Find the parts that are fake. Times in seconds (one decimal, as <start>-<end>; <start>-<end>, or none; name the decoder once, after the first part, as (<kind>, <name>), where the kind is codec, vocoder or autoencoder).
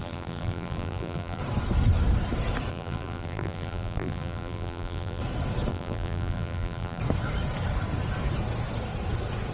0.0-1.4 (vocoder, BigVGAN v2); 2.7-5.2; 5.7-7.0